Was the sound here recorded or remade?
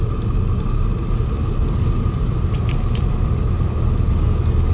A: recorded